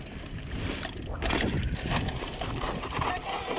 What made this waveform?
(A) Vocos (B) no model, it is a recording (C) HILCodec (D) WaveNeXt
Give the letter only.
B